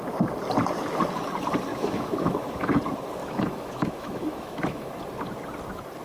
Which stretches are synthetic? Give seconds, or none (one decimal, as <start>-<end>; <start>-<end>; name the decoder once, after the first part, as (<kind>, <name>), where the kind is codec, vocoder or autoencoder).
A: 1.7-2.8 (autoencoder, DAC-VAE); 3.2-4.9